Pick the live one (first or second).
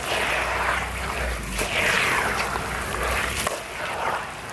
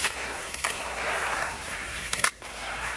first